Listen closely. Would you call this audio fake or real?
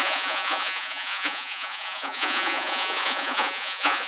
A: fake